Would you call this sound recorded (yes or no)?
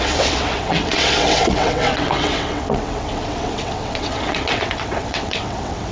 no